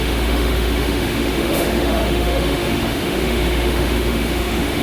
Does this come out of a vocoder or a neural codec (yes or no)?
yes